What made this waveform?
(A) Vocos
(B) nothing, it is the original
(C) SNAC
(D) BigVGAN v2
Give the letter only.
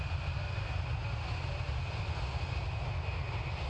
B